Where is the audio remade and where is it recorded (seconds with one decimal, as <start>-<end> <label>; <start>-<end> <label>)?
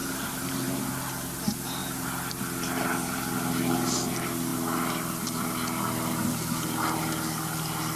0.0-0.8 remade; 0.8-8.0 recorded